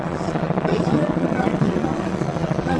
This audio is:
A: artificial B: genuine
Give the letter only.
A